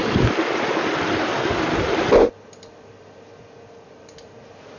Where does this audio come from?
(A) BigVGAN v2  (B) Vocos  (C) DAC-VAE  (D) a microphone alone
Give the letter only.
D